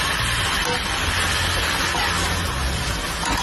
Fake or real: real